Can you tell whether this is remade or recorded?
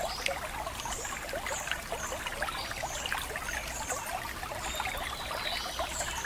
recorded